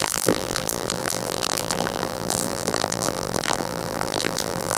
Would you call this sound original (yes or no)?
no